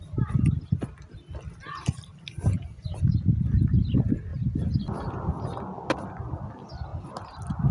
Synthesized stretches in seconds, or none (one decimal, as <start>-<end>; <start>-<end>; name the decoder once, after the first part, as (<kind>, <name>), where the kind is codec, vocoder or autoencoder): 4.3-5.3 (vocoder, BigVGAN v2)

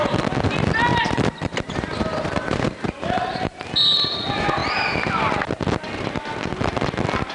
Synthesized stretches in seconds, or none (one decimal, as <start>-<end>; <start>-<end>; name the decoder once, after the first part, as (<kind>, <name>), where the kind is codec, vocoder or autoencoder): 0.9-3.7 (vocoder, BigVGAN v2)

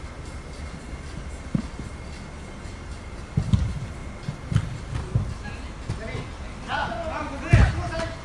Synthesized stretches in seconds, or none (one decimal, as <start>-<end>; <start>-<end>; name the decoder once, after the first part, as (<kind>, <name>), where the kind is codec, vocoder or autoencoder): none

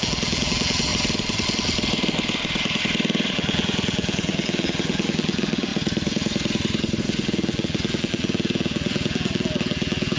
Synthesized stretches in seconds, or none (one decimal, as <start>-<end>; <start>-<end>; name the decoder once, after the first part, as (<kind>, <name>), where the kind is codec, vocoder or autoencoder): 0.0-0.9 (vocoder, BigVGAN v2); 3.3-5.7; 7.0-10.2

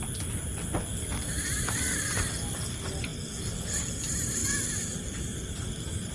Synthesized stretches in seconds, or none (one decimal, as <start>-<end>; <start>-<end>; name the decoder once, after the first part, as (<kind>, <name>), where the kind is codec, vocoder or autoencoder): none

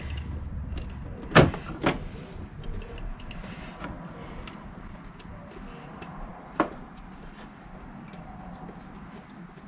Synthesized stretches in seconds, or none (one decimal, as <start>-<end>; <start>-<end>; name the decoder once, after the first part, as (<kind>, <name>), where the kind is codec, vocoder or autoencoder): 6.3-7.1 (vocoder, BigVGAN v2)

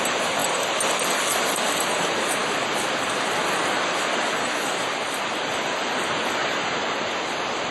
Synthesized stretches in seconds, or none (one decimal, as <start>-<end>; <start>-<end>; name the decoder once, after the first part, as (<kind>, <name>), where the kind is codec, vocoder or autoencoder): 6.4-7.3 (vocoder, BigVGAN v2)